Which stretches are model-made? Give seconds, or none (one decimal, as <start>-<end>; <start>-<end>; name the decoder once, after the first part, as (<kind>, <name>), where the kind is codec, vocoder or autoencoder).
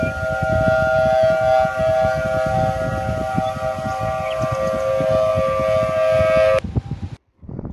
none